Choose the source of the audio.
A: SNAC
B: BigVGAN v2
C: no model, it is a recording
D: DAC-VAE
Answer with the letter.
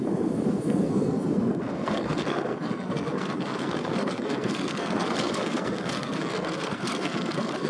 A